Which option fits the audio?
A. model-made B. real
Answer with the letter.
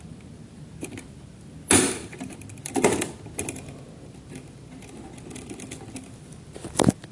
B